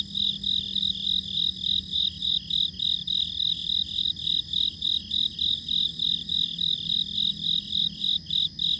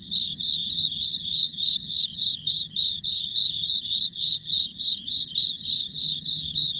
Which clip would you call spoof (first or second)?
second